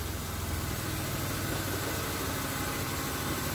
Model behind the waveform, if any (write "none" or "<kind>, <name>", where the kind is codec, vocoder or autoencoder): none